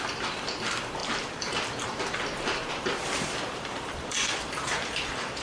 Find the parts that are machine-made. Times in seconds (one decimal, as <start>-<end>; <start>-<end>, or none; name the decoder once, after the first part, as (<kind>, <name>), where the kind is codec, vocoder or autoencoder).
0.0-5.4 (vocoder, BigVGAN v2)